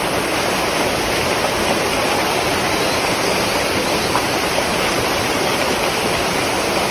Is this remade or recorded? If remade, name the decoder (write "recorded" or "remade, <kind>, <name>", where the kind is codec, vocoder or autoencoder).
recorded